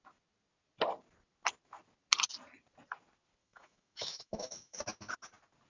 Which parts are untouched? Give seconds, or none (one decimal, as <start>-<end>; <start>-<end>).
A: 0.0-3.4; 4.8-5.7